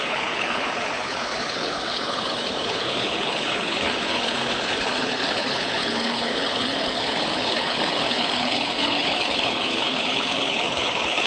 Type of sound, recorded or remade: remade